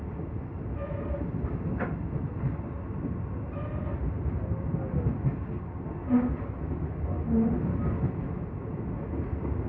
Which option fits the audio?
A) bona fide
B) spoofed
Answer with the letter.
A